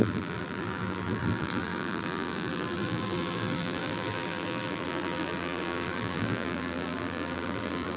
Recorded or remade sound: remade